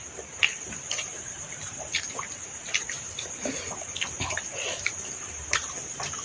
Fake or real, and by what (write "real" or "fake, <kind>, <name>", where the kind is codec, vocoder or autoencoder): fake, vocoder, BigVGAN v2